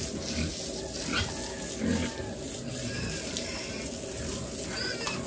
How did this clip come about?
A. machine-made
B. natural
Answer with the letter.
B